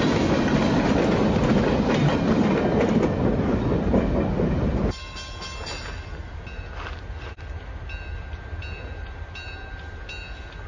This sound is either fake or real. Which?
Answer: real